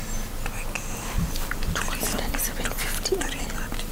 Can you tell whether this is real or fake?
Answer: real